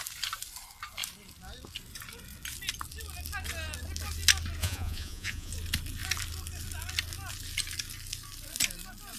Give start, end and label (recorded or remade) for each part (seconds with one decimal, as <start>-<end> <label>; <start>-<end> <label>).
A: 0.0-4.6 recorded; 4.6-5.5 remade; 5.5-9.2 recorded